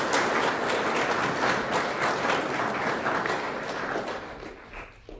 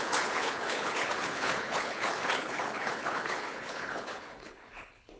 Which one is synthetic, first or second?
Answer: second